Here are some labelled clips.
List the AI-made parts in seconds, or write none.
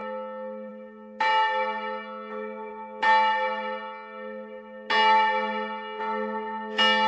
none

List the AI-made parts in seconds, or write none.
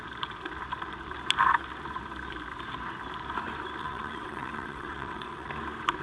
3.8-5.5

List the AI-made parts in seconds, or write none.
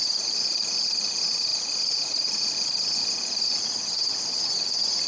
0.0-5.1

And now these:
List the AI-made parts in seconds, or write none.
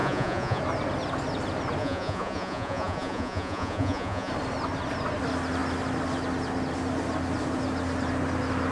0.0-0.6; 1.8-4.3